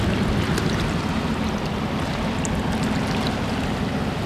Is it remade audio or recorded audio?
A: recorded